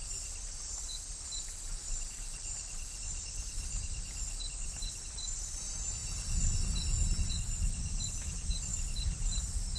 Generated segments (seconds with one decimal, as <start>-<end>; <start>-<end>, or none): none